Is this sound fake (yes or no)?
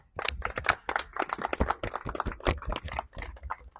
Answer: no